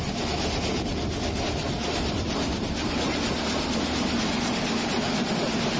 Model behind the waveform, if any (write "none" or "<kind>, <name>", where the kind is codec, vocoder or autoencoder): none